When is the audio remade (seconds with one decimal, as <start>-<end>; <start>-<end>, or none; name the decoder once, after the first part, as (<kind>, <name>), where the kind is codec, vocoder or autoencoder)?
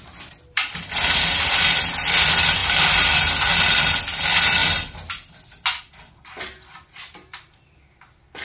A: none